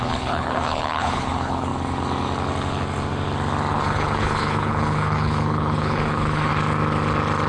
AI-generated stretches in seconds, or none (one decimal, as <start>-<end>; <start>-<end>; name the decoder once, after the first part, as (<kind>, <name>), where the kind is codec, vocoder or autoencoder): 0.0-1.7 (codec, HILCodec); 3.7-6.5